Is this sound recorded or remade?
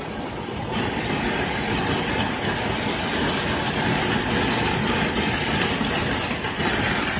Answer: recorded